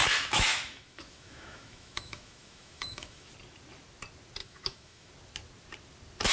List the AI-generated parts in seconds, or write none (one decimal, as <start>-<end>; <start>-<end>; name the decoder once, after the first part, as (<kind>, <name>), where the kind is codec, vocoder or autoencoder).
0.0-3.3 (autoencoder, DAC-VAE); 4.4-5.1